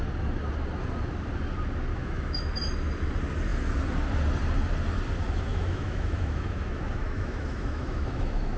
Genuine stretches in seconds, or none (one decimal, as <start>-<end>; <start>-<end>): 0.0-1.9; 2.5-5.5